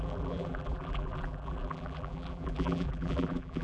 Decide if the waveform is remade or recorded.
remade